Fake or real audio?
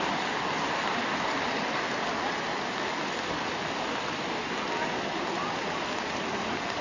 real